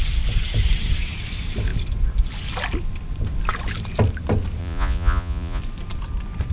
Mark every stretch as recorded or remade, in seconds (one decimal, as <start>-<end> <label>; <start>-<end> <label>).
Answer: 0.0-4.6 recorded; 4.6-5.6 remade; 5.6-6.5 recorded